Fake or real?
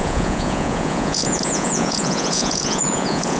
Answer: fake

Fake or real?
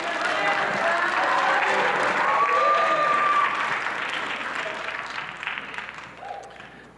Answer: fake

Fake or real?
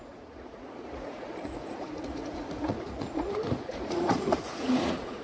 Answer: fake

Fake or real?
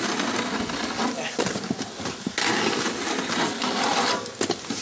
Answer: real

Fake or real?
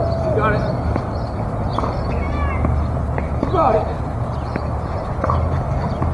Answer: real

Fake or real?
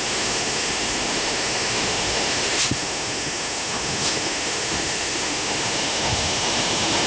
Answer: fake